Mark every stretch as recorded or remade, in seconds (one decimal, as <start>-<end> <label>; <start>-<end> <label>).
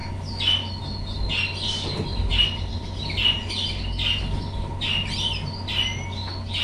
0.0-6.6 recorded